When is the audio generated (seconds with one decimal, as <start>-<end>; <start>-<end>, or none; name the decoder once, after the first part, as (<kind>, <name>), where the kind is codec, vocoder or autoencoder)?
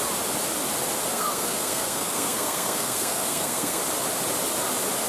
1.1-3.8 (codec, SNAC)